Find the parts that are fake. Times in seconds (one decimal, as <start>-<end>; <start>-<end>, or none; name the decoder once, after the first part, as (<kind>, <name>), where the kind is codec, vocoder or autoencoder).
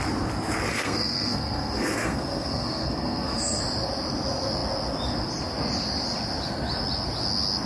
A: 0.7-3.6 (codec, SNAC)